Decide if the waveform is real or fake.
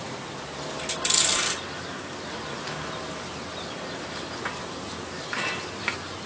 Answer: real